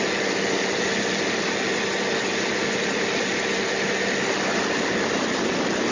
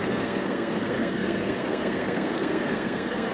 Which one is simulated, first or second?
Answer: second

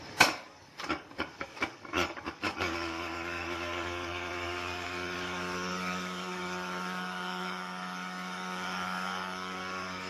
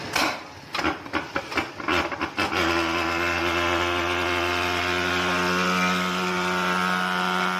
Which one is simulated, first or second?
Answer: first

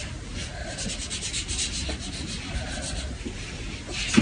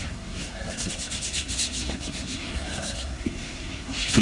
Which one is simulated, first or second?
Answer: second